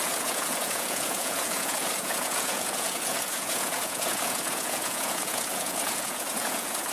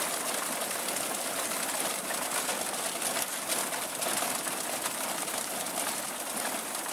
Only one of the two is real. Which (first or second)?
second